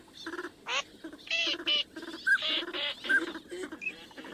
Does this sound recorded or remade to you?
recorded